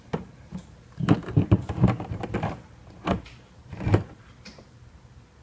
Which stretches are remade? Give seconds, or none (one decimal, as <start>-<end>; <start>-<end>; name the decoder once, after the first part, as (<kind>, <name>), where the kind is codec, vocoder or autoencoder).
0.0-5.4 (vocoder, BigVGAN v2)